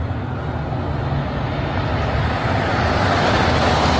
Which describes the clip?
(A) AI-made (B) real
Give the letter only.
B